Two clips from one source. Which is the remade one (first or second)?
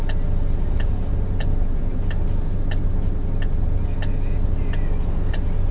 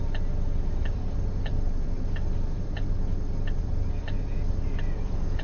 second